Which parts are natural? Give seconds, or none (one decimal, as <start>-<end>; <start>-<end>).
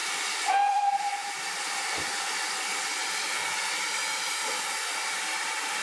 1.6-5.8